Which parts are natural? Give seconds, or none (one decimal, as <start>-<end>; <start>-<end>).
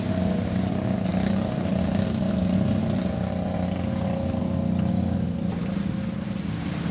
0.0-6.9